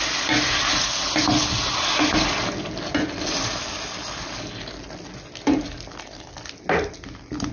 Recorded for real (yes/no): yes